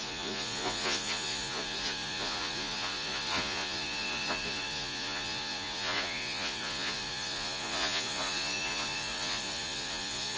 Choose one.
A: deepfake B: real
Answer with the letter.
A